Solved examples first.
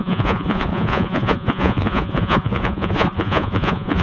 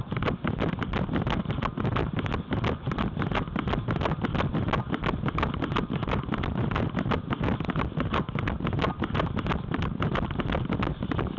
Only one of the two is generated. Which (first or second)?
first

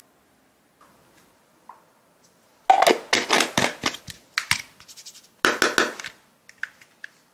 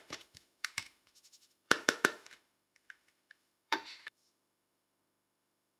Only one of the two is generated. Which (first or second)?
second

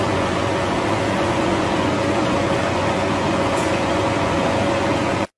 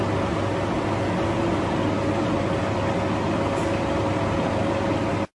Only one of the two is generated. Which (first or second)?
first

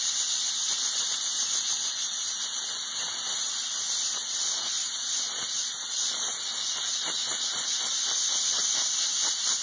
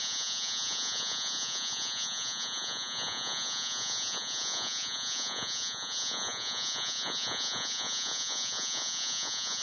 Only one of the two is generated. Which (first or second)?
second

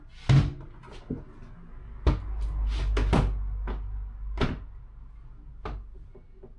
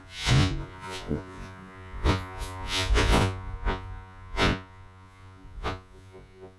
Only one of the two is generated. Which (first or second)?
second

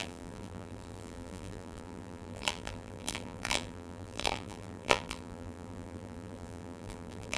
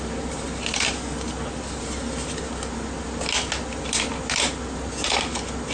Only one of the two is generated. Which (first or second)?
first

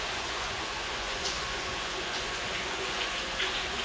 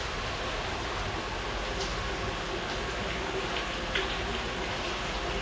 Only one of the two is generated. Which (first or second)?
first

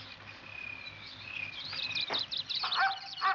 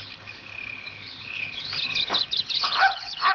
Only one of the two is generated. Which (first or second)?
second